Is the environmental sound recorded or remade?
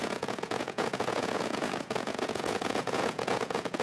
remade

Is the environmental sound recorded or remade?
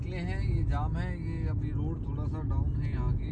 recorded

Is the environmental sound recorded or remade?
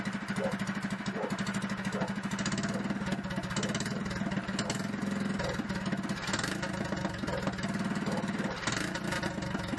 recorded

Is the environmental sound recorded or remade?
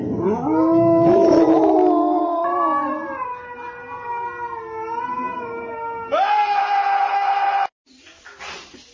recorded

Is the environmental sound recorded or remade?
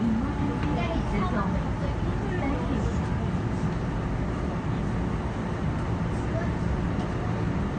recorded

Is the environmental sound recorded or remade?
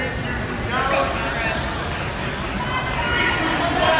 recorded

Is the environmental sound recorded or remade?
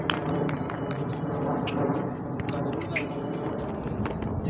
recorded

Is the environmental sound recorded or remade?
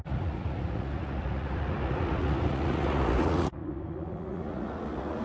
remade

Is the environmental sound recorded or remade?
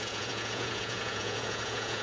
remade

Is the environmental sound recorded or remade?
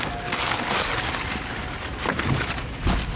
recorded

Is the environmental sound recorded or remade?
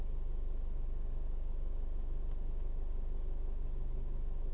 recorded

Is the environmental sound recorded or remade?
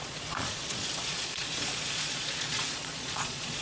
remade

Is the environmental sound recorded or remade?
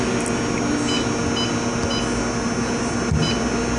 recorded